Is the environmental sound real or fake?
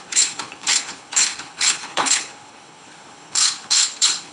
fake